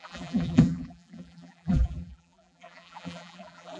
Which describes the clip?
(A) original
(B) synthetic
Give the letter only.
B